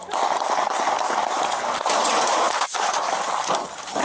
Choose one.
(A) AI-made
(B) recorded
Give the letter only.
B